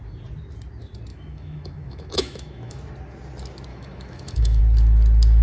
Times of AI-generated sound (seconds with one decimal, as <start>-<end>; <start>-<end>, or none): 1.1-2.8; 3.7-4.6